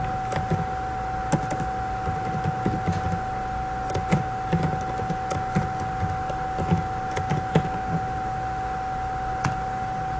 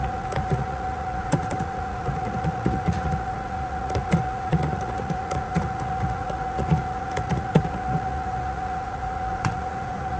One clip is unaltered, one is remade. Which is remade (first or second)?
second